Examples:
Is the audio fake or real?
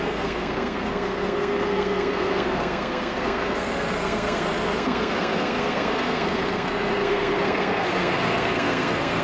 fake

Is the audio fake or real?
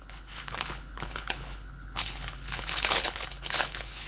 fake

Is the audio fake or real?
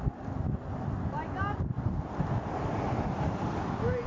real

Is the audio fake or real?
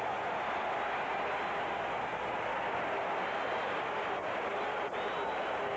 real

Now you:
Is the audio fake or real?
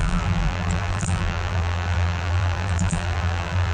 fake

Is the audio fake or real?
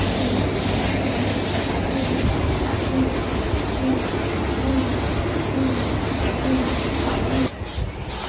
real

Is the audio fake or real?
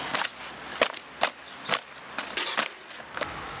real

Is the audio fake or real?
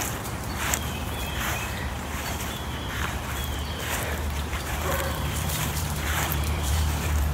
fake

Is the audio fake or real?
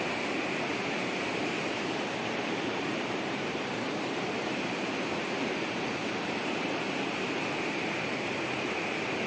fake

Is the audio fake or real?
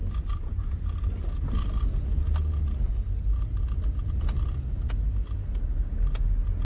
real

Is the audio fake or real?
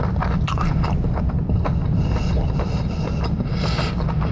fake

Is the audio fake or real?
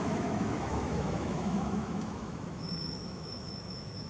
fake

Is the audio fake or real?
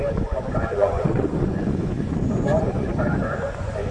fake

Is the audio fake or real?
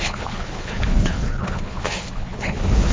fake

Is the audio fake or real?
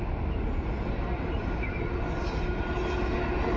real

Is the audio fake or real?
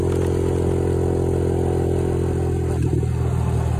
real